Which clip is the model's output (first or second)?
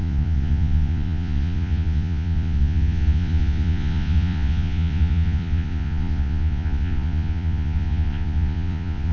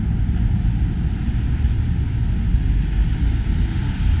first